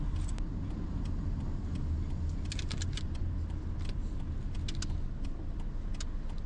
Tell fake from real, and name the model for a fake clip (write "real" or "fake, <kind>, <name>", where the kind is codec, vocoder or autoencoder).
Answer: real